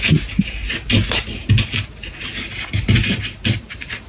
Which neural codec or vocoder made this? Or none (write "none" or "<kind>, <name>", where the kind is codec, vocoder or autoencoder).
none